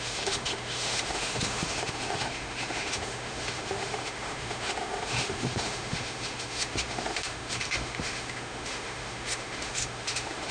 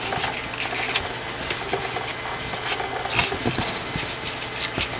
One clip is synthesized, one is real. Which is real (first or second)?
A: second